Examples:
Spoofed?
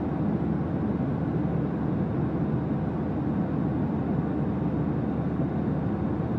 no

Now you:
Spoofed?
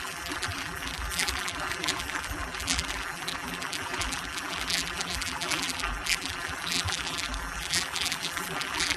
yes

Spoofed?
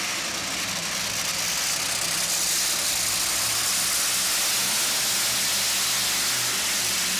no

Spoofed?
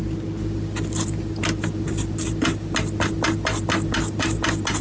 no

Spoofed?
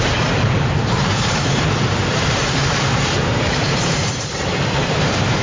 yes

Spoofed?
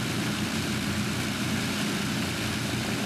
no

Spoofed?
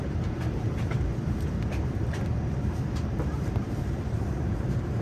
yes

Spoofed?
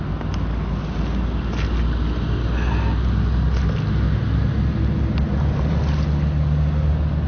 no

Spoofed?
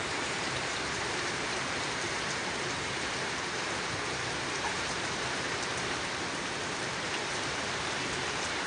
yes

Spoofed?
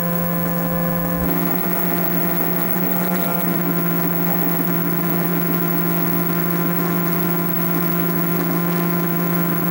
yes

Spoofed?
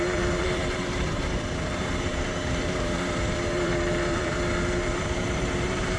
yes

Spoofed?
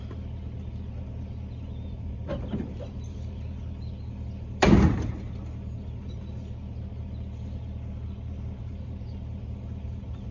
no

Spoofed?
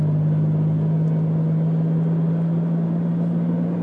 no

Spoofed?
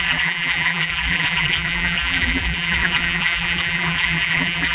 yes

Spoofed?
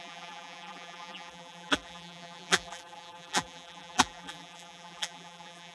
yes